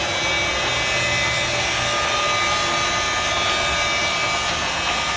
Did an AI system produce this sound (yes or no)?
no